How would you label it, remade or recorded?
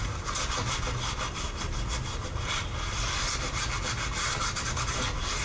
remade